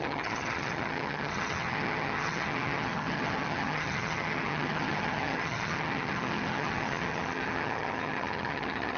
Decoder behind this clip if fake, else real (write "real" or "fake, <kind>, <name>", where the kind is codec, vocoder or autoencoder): fake, vocoder, HiFi-GAN